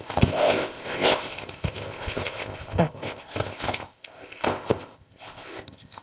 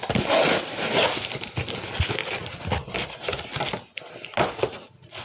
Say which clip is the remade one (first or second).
first